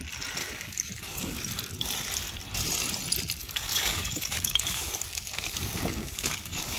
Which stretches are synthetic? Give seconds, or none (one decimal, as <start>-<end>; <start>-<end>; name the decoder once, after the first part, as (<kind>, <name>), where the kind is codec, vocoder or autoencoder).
0.4-1.4 (codec, DAC); 3.4-6.8